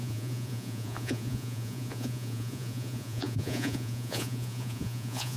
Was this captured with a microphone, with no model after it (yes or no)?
no